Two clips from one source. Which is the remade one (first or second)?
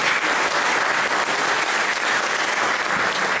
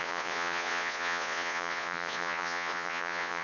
second